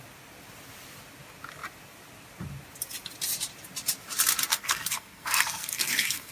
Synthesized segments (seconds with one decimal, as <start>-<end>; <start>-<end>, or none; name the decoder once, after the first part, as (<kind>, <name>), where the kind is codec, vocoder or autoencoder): 4.5-6.3 (codec, SNAC)